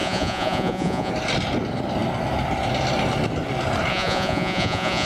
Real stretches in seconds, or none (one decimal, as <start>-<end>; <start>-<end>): 1.1-3.9